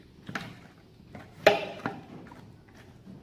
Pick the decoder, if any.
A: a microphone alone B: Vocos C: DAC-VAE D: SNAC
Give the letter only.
A